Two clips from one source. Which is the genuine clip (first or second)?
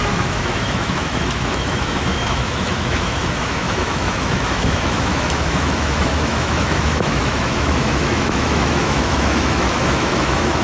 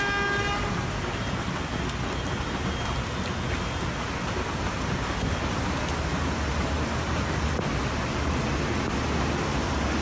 second